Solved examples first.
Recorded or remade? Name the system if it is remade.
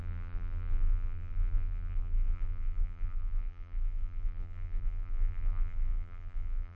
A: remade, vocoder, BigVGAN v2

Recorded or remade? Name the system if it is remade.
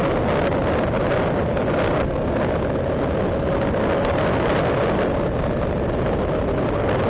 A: recorded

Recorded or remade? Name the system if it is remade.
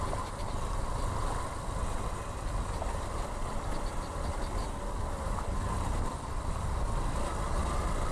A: recorded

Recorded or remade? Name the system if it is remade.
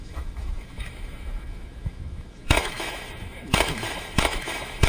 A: remade, autoencoder, DAC-VAE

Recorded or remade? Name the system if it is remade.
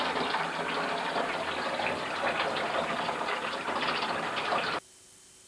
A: remade, vocoder, BigVGAN v2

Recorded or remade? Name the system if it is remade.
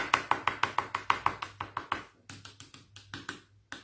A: recorded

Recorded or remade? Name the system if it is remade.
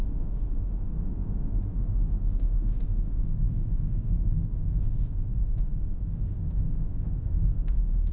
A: remade, autoencoder, DAC-VAE